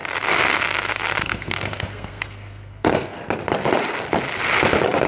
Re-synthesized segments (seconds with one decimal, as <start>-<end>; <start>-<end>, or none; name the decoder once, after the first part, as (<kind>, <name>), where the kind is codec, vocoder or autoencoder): 1.2-3.2 (codec, SNAC)

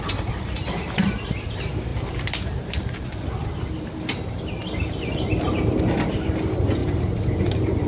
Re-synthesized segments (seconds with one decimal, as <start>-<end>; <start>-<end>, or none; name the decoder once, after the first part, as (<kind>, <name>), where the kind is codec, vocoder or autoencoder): none

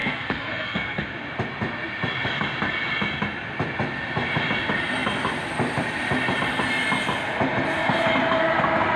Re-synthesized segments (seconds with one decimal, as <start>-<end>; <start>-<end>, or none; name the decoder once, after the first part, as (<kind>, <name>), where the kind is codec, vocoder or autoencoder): 0.0-1.1 (codec, SNAC)

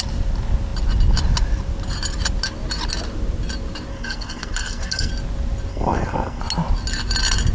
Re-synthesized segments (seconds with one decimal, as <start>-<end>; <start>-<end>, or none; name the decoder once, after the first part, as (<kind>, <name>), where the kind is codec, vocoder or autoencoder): 3.9-5.1 (codec, SNAC); 5.7-6.4

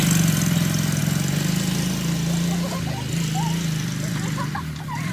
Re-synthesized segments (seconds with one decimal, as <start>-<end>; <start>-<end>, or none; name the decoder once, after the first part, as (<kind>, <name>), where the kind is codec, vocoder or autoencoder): none